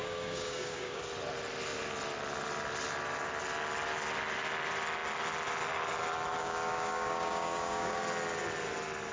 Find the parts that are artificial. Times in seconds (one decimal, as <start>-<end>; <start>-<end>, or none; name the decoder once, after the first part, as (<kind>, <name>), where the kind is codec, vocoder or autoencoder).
0.0-1.0 (codec, DAC); 6.4-8.0